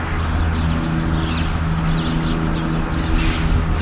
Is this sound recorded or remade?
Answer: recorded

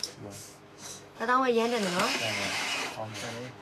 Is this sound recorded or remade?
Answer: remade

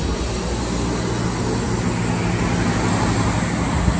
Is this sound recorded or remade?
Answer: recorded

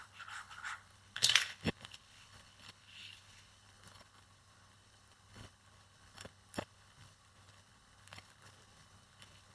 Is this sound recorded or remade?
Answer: remade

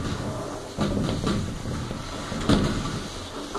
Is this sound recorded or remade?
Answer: recorded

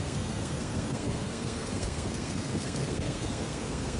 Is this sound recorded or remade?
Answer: remade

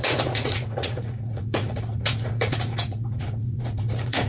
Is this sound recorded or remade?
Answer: remade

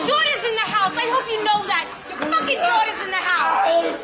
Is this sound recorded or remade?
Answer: recorded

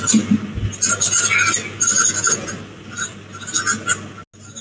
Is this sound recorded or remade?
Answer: recorded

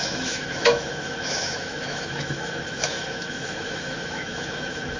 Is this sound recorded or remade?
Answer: remade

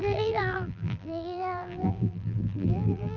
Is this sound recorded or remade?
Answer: remade